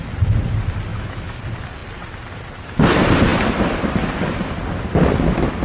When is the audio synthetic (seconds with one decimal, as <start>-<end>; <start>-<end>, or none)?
0.9-1.4